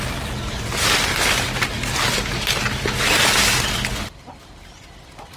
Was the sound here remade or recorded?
recorded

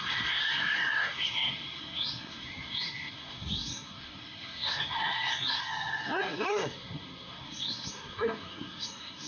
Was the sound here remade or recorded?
remade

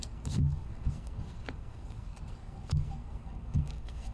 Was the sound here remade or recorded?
remade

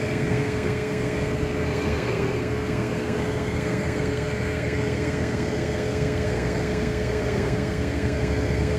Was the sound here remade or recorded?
remade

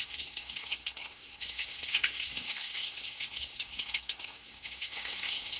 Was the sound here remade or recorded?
remade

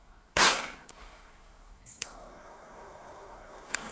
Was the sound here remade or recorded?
remade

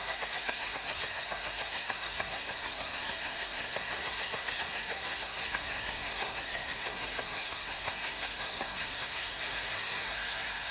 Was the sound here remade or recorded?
remade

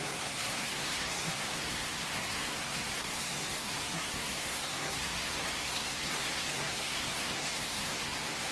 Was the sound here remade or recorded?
remade